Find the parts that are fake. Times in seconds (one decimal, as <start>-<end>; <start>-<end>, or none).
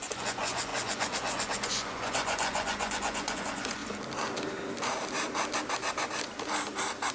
0.0-3.8